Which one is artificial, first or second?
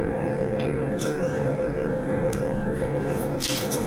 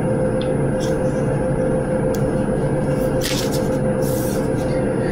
first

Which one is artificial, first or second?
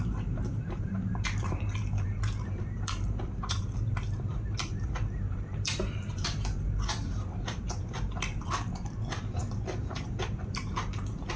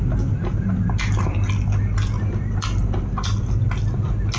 first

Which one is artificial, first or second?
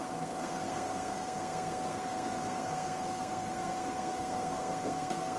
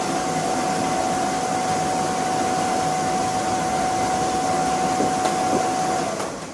first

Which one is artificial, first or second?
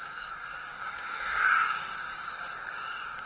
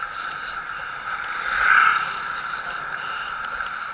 first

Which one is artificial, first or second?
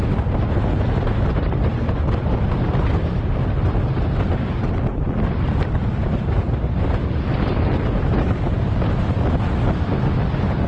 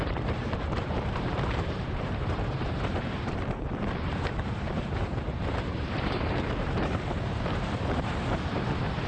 second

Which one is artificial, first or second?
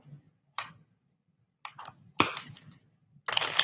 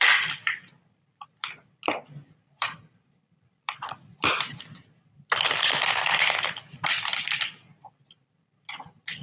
second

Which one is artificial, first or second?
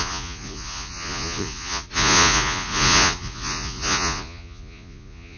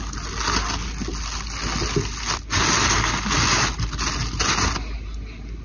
first